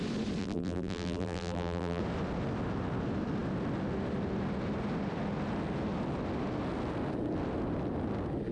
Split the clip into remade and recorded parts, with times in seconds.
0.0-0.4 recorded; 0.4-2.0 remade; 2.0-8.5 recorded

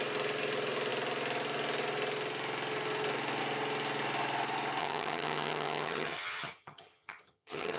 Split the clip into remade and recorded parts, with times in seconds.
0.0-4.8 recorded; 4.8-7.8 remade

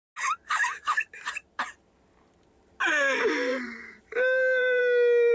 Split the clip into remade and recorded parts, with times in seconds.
0.0-0.6 recorded; 0.6-1.9 remade; 1.9-3.5 recorded; 3.5-4.8 remade; 4.8-5.3 recorded

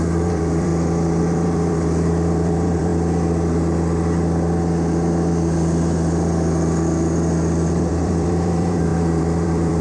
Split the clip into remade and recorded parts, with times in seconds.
0.0-0.7 remade; 0.7-1.2 recorded; 1.2-2.9 remade; 2.9-7.9 recorded; 7.9-9.8 remade

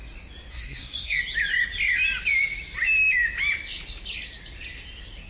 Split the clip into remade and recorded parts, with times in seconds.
0.0-0.5 recorded; 0.5-1.2 remade; 1.2-5.3 recorded

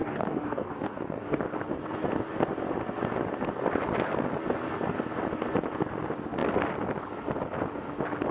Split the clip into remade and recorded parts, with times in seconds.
0.0-1.4 remade; 1.4-8.3 recorded